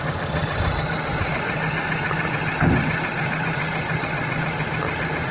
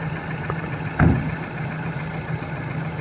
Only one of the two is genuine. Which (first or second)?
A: first